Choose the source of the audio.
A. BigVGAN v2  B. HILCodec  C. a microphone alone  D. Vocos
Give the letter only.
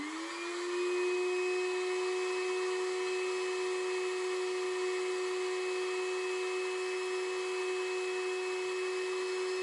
C